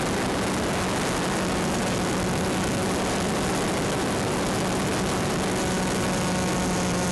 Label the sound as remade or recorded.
recorded